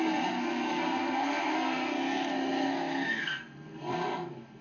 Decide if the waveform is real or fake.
fake